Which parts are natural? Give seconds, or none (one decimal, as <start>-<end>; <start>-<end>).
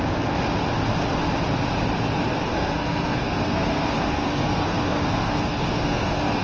0.0-2.5